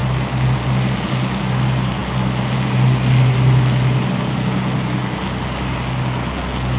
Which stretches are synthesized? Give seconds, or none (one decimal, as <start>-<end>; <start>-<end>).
none